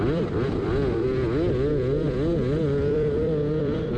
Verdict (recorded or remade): remade